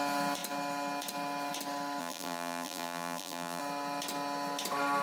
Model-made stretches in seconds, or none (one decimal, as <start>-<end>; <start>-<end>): 2.0-3.6